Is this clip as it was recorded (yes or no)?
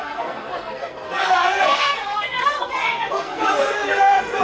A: no